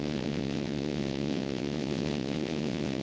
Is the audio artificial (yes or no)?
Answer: yes